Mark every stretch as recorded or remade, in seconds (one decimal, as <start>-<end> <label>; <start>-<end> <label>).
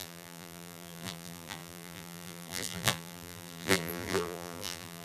0.0-5.0 remade